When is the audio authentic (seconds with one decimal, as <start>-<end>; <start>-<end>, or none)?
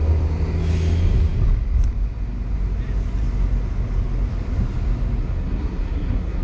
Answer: 0.0-5.2